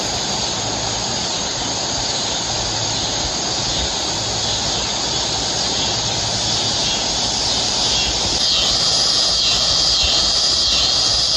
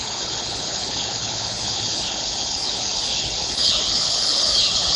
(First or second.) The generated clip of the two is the second